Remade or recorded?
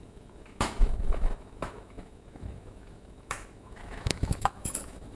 remade